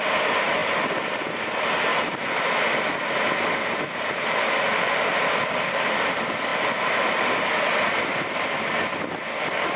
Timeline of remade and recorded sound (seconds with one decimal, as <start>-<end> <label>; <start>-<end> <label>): 0.0-9.8 recorded